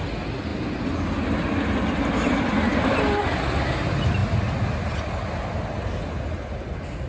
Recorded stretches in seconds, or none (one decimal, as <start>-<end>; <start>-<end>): 0.0-7.1